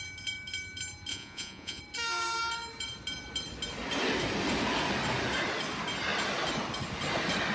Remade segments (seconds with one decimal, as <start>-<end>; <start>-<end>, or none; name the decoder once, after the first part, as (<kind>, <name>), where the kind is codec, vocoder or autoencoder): 1.1-1.8 (vocoder, Vocos)